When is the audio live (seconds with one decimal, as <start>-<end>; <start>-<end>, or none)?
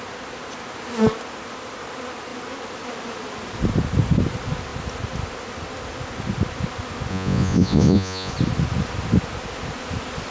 0.0-7.1; 8.3-10.3